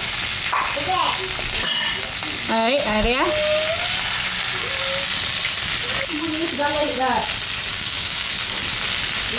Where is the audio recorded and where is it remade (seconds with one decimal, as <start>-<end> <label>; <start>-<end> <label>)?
0.0-7.7 recorded; 7.7-8.3 remade; 8.3-9.4 recorded